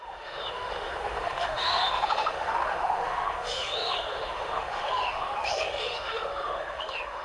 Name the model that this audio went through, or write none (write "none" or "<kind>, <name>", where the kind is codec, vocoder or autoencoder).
autoencoder, DAC-VAE